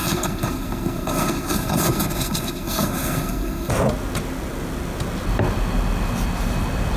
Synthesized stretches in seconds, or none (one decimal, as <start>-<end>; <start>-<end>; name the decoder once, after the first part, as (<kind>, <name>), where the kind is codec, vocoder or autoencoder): 0.0-3.7 (codec, SNAC)